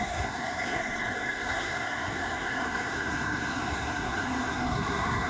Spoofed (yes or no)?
yes